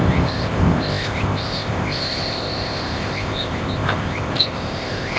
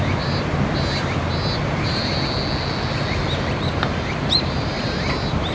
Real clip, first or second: second